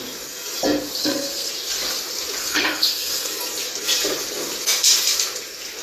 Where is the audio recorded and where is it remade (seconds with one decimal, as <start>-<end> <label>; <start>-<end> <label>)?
0.0-1.0 recorded; 1.0-1.5 remade; 1.5-2.4 recorded; 2.4-3.4 remade; 3.4-5.8 recorded